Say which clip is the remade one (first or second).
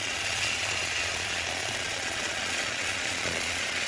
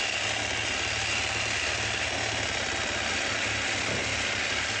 first